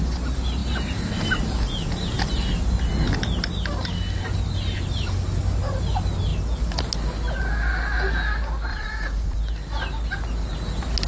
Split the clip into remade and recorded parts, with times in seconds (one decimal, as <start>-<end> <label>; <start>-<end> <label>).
0.0-8.7 recorded; 8.7-9.4 remade; 9.4-11.1 recorded